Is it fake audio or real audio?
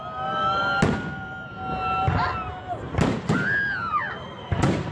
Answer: real